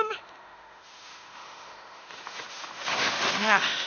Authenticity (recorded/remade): remade